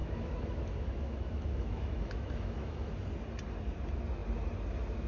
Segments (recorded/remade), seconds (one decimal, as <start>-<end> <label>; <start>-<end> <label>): 0.0-3.1 remade; 3.1-5.1 recorded